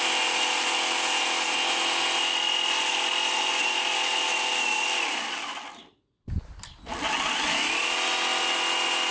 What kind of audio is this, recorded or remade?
recorded